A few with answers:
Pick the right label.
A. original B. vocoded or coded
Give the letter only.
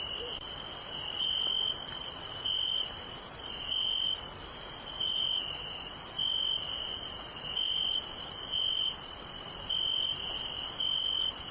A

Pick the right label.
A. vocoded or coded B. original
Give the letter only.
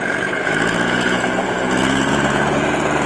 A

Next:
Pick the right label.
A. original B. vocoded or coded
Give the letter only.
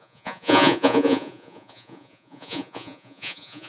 B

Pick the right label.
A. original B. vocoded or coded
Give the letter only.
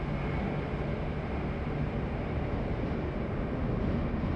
A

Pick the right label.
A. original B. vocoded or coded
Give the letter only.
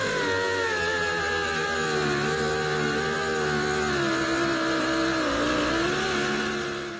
A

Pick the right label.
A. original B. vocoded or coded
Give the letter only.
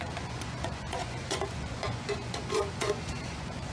B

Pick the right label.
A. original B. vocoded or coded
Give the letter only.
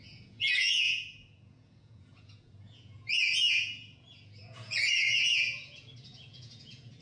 B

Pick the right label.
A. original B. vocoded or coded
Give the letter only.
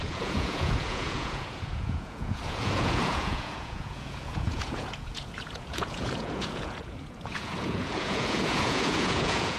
B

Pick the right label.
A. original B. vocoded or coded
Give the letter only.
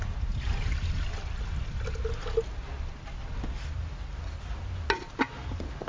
A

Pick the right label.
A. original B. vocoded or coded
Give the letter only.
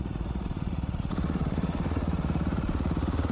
B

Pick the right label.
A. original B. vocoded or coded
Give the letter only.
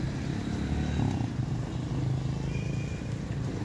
A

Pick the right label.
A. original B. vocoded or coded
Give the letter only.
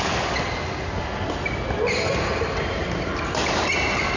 A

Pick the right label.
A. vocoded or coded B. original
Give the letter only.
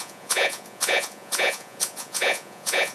A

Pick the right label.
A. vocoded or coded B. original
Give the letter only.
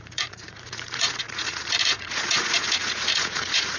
A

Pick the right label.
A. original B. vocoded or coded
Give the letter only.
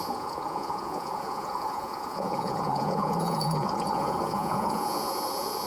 B